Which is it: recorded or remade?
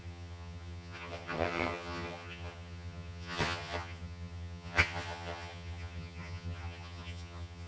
remade